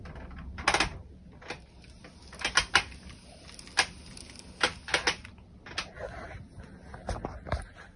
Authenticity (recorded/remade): recorded